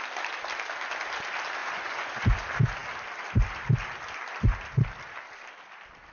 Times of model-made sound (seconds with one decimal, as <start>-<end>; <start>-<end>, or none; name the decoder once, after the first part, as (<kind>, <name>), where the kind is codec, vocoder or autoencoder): 1.6-2.1 (vocoder, Vocos)